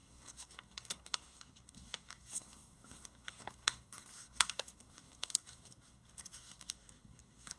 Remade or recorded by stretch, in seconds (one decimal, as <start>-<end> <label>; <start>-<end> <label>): 0.0-7.6 remade